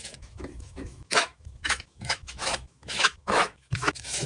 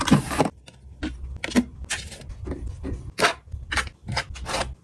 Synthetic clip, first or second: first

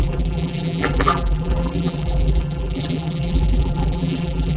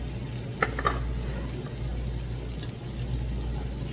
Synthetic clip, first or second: first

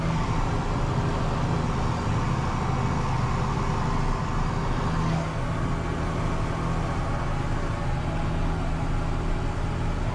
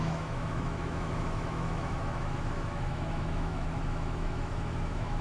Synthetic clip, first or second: second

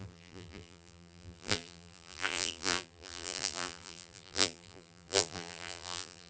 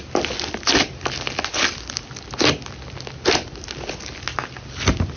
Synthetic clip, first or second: first